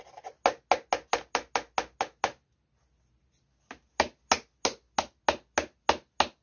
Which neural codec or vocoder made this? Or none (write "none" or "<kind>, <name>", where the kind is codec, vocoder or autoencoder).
none